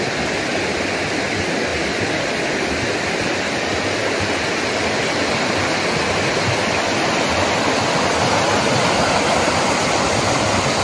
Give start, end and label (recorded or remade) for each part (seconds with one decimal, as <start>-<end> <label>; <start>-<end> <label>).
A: 0.0-10.8 recorded